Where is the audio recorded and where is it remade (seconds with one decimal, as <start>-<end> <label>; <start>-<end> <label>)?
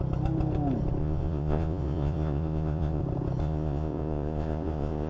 0.0-1.0 recorded; 1.0-3.0 remade; 3.0-3.4 recorded; 3.4-5.1 remade